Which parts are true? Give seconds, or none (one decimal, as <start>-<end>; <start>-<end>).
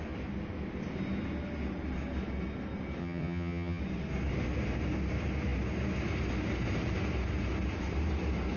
0.0-3.0; 3.8-8.6